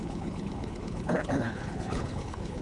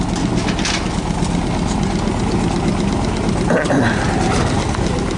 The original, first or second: second